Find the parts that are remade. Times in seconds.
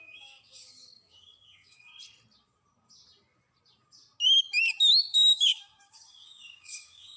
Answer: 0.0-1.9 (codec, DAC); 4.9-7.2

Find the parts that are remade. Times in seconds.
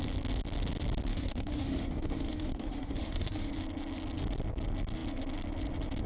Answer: 1.1-3.5 (autoencoder, DAC-VAE)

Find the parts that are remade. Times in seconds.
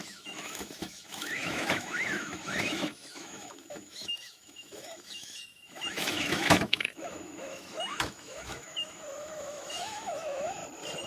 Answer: 0.0-10.6 (autoencoder, DAC-VAE)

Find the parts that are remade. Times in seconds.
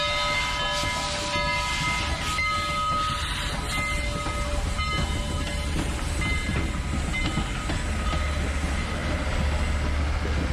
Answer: none